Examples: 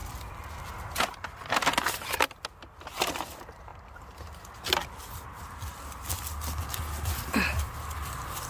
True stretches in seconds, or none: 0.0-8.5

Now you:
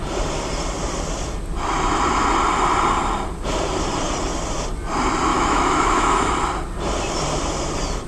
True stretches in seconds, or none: 0.0-5.3; 6.3-8.1

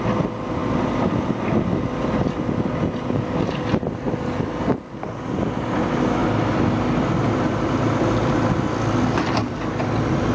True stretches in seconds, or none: 0.0-10.3